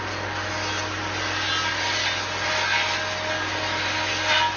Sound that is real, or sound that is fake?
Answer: real